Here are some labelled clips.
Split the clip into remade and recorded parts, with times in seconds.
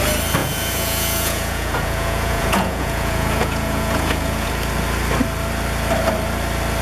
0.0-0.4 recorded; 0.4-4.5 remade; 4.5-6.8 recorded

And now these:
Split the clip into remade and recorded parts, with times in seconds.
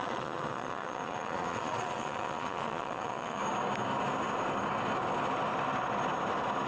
0.0-3.4 remade; 3.4-6.7 recorded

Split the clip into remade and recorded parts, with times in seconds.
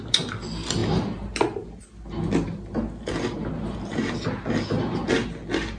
0.0-5.8 recorded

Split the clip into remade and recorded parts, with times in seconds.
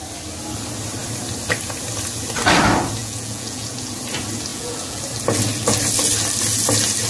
0.0-3.0 recorded; 3.0-3.9 remade; 3.9-4.5 recorded; 4.5-5.0 remade; 5.0-7.1 recorded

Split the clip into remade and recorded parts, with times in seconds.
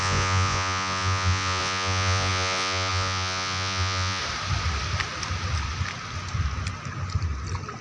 0.0-4.2 remade; 4.2-7.8 recorded